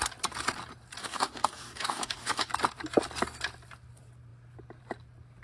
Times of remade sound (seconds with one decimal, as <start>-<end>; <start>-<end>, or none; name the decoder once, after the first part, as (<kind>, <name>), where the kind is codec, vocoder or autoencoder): 1.0-2.5 (codec, DAC)